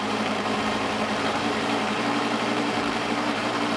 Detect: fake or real fake